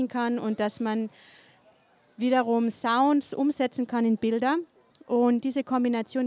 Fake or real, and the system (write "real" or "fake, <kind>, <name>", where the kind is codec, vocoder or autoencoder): real